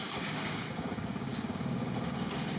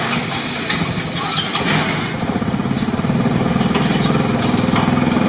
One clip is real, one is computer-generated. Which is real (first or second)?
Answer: second